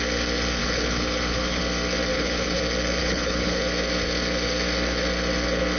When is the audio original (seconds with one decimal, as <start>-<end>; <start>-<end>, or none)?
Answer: 0.0-0.6; 1.6-2.1; 2.6-3.0; 3.6-5.8